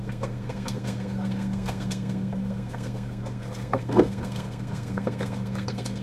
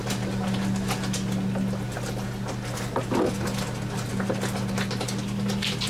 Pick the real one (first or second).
second